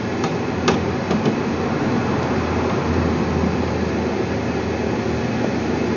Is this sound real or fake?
real